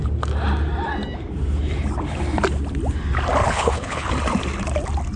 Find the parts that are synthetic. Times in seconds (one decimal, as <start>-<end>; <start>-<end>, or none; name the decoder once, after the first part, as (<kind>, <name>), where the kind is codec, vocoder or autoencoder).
3.4-4.1 (codec, HILCodec)